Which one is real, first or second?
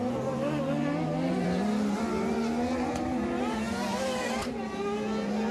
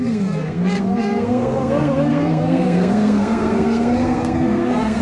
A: first